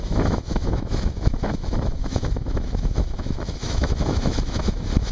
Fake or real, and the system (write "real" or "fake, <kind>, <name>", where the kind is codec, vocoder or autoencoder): fake, autoencoder, DAC-VAE